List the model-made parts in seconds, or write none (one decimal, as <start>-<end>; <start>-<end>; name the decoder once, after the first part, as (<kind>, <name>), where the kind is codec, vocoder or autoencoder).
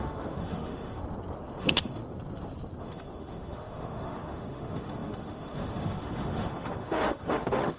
0.0-1.0 (autoencoder, DAC-VAE); 1.6-2.0; 2.8-7.8